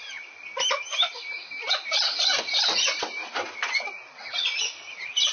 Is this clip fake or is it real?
real